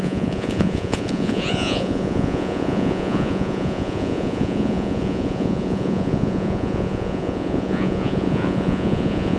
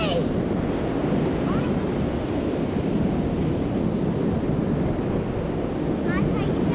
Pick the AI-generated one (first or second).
first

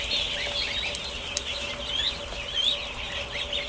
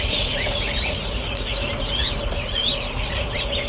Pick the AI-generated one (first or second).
second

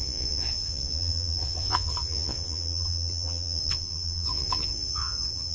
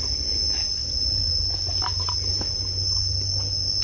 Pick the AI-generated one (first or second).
first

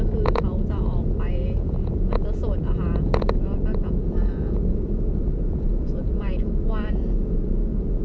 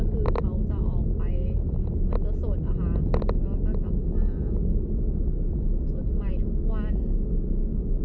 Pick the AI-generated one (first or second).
first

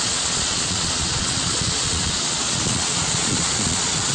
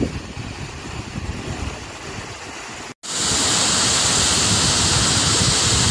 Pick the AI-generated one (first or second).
first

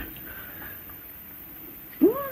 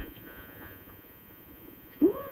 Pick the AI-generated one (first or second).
second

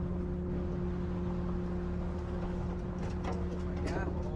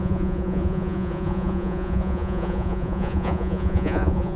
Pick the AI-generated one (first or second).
second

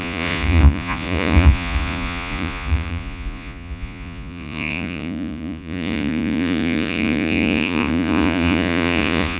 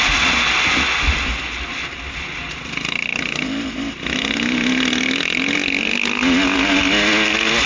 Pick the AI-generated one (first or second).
first